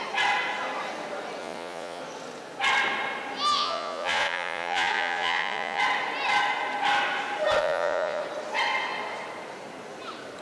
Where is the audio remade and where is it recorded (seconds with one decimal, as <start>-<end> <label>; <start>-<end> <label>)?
0.0-1.4 recorded; 1.4-2.0 remade; 2.0-3.5 recorded; 3.5-5.8 remade; 5.8-7.6 recorded; 7.6-8.2 remade; 8.2-10.4 recorded